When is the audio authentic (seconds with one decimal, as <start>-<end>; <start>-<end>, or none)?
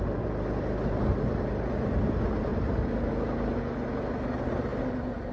0.0-5.3